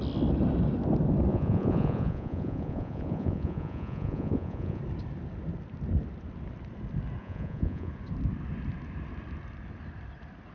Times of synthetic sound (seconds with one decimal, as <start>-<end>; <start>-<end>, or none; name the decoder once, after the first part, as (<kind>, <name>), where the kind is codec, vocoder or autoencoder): 1.3-4.8 (vocoder, Vocos); 7.2-7.9